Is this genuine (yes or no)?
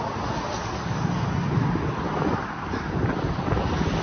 yes